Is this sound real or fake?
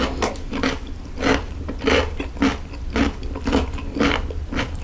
real